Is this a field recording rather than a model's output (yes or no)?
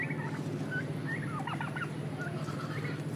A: yes